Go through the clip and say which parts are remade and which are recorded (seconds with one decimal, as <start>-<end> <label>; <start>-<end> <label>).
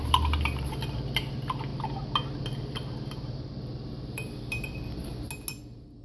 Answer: 0.0-1.7 remade; 1.7-3.6 recorded; 3.6-5.1 remade; 5.1-6.0 recorded